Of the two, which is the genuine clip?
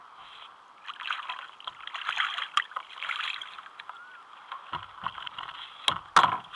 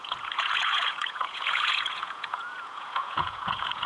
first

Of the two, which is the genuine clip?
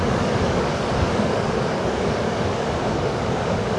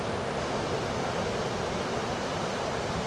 second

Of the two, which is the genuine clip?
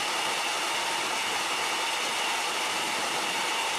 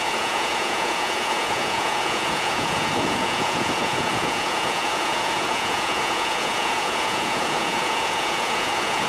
first